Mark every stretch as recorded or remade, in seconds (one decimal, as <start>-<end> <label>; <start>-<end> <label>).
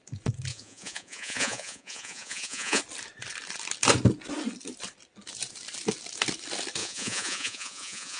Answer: 0.0-0.5 recorded; 0.5-2.8 remade; 2.8-6.8 recorded; 6.8-8.2 remade